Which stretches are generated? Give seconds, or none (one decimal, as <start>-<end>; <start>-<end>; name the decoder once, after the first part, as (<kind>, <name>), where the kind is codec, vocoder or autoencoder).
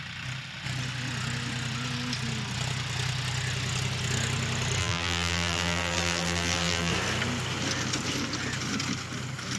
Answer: 4.8-6.9 (vocoder, BigVGAN v2)